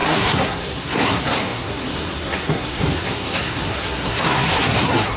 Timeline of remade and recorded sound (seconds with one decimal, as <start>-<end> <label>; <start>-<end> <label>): 0.0-5.2 remade